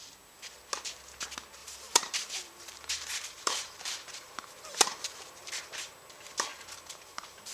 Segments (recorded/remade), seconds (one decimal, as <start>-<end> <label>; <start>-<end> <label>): 0.0-1.6 recorded; 1.6-6.1 remade; 6.1-6.5 recorded; 6.5-7.5 remade